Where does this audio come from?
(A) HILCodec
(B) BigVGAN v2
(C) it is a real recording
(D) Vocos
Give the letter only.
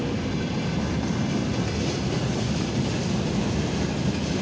C